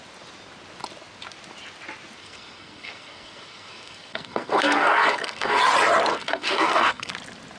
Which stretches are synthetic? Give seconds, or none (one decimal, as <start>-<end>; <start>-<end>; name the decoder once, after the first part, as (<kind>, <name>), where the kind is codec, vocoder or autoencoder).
2.2-5.6 (codec, SNAC); 6.1-7.1